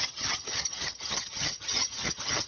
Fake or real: fake